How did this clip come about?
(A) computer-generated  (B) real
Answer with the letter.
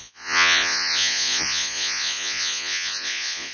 A